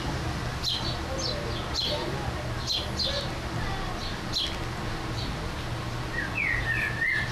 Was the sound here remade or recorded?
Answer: recorded